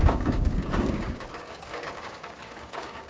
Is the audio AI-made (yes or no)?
yes